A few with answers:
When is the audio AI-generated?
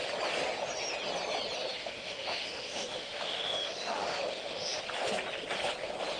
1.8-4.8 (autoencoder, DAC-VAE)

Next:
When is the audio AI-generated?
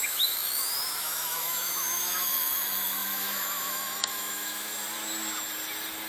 0.0-4.7 (autoencoder, DAC-VAE)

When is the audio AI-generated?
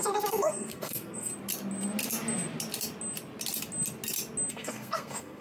0.0-1.3 (codec, SNAC); 4.5-5.4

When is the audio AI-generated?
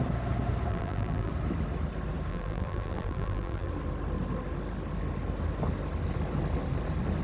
0.7-1.3 (vocoder, BigVGAN v2); 2.3-3.7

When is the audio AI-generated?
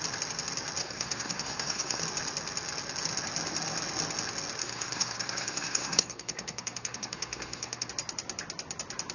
0.8-2.0 (codec, SNAC); 4.6-7.9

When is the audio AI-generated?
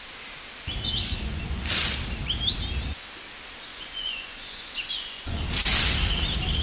1.0-1.6 (vocoder, Vocos); 3.7-5.4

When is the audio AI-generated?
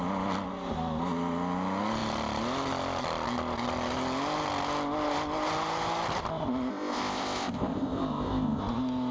6.7-8.6 (codec, ZipCodec)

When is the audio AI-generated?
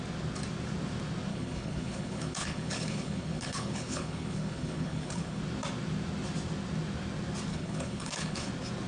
1.3-5.4 (codec, HILCodec); 7.5-8.5